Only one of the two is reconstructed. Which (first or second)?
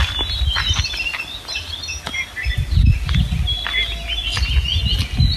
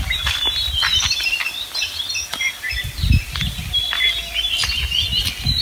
second